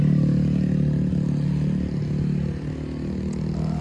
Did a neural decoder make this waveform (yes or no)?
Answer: no